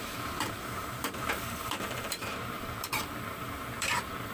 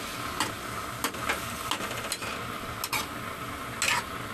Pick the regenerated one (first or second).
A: first